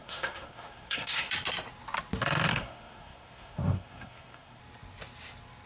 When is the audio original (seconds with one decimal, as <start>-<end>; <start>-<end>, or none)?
1.3-2.5; 4.6-5.7